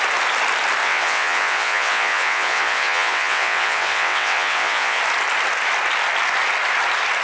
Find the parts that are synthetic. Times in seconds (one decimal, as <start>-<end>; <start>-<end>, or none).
0.8-5.0